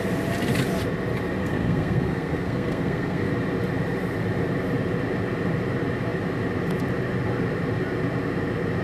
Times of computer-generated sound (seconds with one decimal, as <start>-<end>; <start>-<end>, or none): 1.4-3.3